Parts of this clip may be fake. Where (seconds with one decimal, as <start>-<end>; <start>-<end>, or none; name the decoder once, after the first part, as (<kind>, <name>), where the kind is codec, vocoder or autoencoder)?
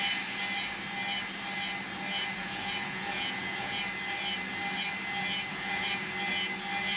2.4-3.8 (vocoder, Vocos); 5.5-6.1